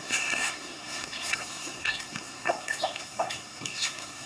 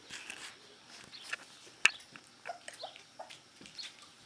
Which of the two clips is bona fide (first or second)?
second